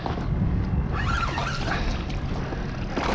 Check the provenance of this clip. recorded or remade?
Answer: recorded